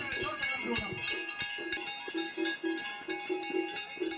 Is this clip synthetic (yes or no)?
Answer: no